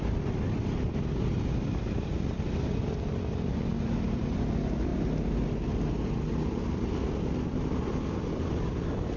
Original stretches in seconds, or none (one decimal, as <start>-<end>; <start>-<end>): 0.0-9.2